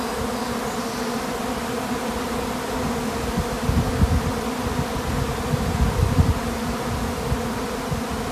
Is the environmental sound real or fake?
real